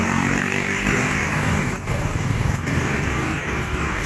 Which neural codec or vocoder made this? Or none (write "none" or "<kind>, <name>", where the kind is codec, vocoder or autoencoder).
codec, DAC